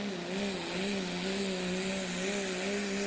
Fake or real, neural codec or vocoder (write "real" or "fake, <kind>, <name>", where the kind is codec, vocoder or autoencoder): real